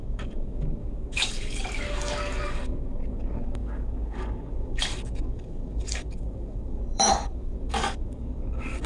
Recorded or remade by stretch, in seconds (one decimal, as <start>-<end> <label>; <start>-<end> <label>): 0.0-8.9 remade